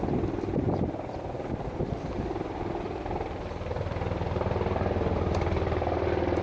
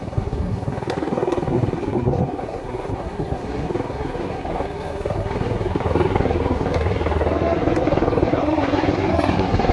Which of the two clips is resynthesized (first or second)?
second